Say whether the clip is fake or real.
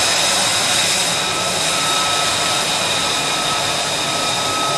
real